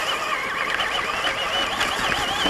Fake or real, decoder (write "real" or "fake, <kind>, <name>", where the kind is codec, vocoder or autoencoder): real